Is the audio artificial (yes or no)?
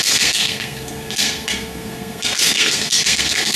yes